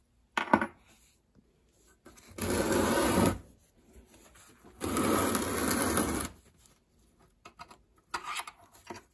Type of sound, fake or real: real